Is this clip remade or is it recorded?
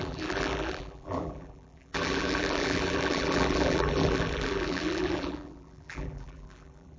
remade